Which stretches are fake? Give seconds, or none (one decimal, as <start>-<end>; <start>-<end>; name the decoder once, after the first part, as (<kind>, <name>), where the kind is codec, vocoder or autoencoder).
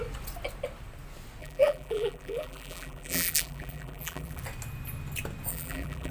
1.4-4.4 (vocoder, BigVGAN v2); 5.5-6.1